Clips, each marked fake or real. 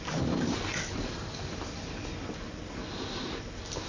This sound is fake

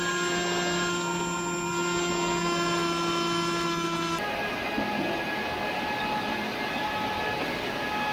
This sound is real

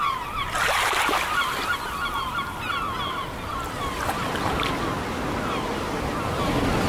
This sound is real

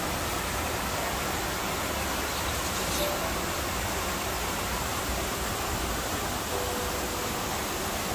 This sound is real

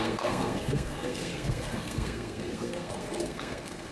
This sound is fake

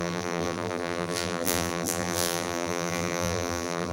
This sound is fake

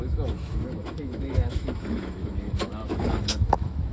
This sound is fake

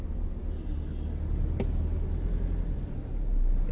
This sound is real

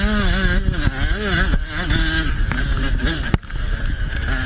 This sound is real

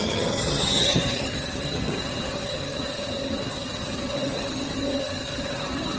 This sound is fake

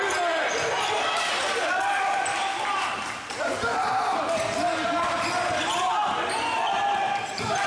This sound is real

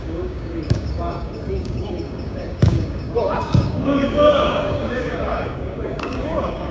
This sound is fake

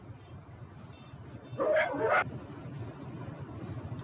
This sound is real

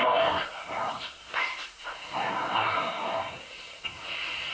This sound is fake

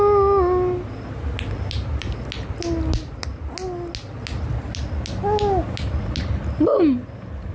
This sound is real